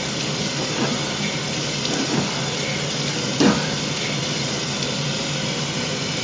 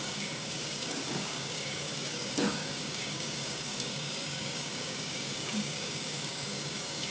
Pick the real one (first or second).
first